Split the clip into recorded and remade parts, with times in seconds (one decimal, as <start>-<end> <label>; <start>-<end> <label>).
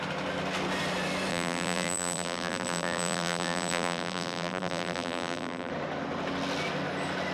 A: 0.0-1.3 recorded; 1.3-5.7 remade; 5.7-7.3 recorded